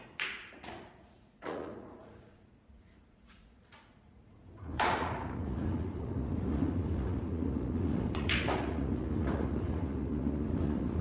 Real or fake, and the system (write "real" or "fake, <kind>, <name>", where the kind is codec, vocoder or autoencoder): fake, vocoder, Vocos